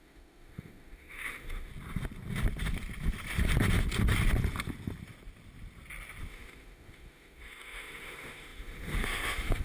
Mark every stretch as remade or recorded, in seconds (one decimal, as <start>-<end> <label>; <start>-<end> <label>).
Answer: 0.0-1.7 remade; 1.7-6.3 recorded; 6.3-9.6 remade